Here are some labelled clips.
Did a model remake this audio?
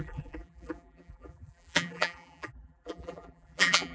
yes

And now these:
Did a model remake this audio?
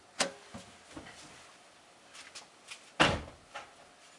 no